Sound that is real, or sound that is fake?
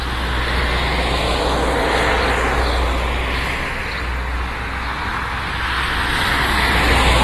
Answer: real